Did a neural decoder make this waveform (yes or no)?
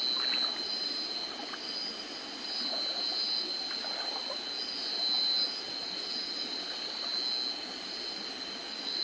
no